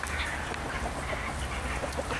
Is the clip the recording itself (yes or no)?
yes